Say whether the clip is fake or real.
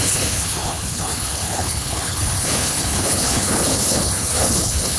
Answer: fake